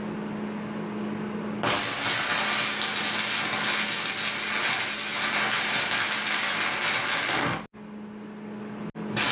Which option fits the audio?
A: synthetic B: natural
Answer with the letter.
B